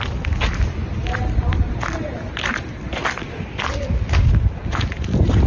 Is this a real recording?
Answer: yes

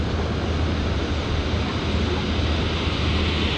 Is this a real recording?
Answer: yes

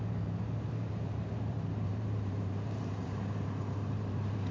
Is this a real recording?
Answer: no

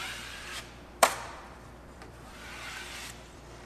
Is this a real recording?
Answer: no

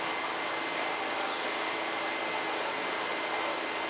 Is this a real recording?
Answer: yes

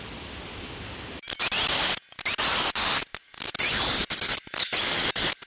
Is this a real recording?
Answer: yes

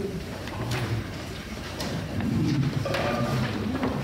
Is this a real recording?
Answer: no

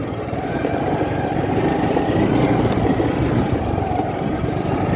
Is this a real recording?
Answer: no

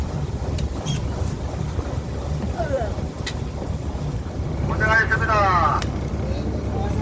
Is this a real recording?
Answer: no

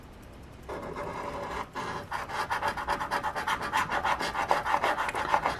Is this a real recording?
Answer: yes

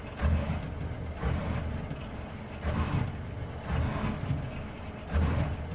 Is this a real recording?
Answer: yes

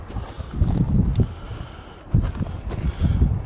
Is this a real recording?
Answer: yes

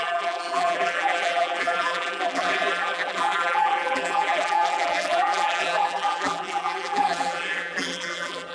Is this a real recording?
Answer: no